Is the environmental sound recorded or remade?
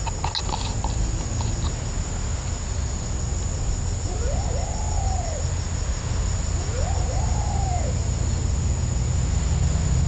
recorded